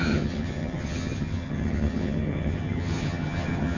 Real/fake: fake